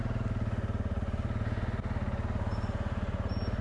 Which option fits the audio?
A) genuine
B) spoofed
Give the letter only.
A